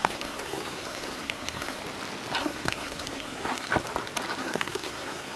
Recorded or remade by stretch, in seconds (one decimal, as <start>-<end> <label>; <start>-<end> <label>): 0.0-1.8 remade; 1.8-2.4 recorded; 2.4-3.7 remade; 3.7-4.4 recorded; 4.4-5.4 remade